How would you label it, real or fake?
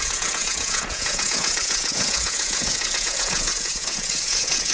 fake